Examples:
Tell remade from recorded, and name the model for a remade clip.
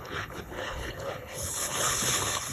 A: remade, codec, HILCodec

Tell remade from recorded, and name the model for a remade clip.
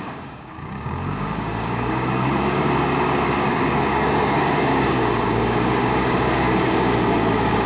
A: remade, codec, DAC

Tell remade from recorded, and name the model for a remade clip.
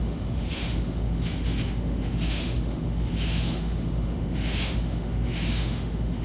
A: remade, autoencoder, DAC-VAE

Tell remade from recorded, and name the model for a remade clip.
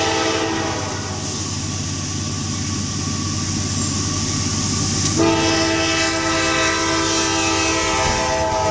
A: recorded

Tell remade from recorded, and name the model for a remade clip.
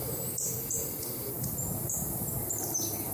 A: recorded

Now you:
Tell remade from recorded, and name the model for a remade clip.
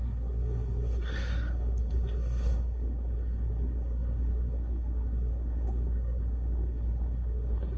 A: remade, codec, SNAC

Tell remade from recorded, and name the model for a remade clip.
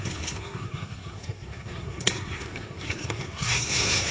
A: remade, codec, SNAC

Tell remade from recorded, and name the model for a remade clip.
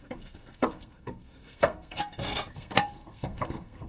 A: remade, codec, SNAC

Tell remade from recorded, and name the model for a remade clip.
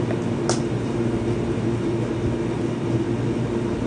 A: recorded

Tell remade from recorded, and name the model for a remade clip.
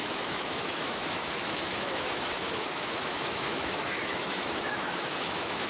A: remade, autoencoder, DAC-VAE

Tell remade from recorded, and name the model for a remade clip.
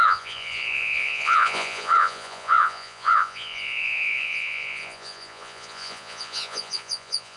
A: remade, vocoder, Vocos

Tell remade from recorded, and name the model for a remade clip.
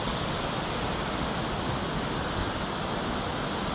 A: recorded